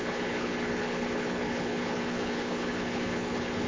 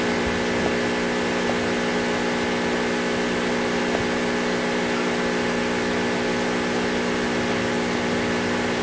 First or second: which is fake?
first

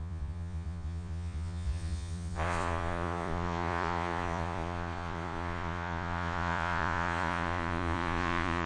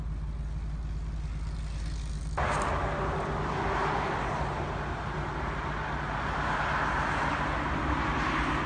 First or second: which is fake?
first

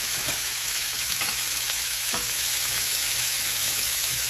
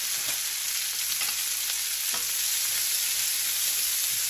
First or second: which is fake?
first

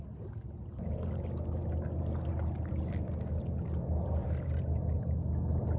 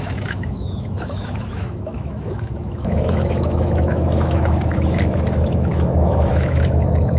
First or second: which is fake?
second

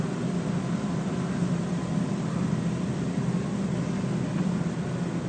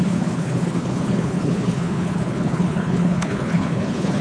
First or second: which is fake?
second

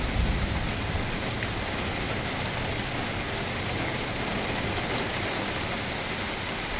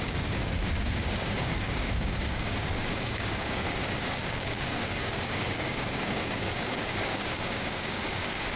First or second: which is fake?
second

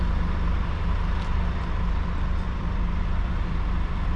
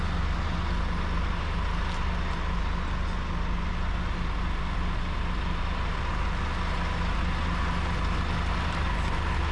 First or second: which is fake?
first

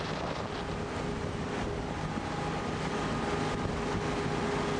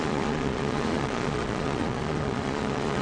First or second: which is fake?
second